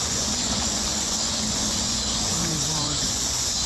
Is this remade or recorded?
remade